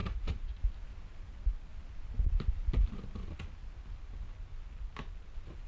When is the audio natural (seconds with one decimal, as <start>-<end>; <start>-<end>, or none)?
0.6-5.7